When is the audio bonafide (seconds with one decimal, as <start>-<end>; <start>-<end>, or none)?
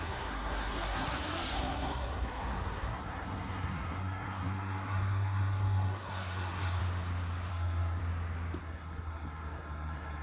6.8-7.5; 8.0-8.6